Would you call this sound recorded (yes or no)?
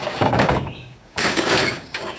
no